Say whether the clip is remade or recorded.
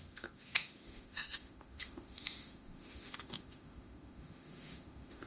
remade